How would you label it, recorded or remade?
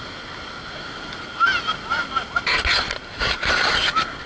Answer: recorded